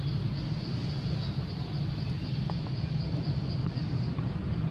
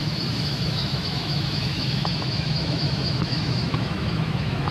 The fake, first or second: second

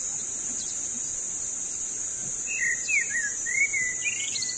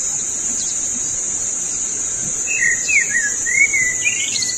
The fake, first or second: second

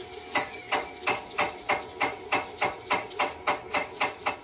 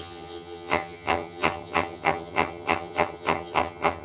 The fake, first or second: second